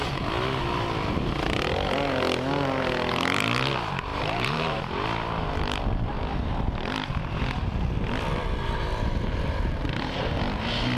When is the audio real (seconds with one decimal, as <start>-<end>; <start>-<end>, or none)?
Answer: 0.0-4.1; 4.8-6.3; 6.9-11.0